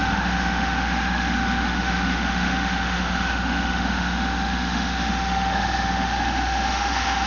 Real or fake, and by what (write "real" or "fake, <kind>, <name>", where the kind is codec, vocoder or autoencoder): fake, autoencoder, DAC-VAE